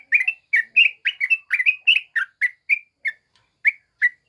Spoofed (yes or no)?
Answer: no